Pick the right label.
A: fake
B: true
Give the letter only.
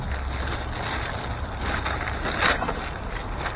B